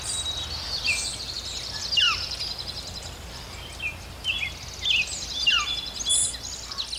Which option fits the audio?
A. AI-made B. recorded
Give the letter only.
B